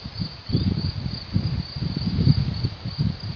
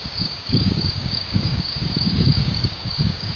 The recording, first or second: first